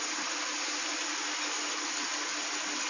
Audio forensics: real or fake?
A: real